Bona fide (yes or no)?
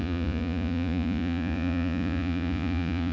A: no